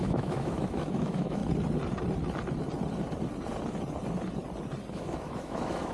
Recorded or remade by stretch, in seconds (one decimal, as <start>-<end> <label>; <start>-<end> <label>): 0.0-1.4 remade; 1.4-4.9 recorded; 4.9-5.9 remade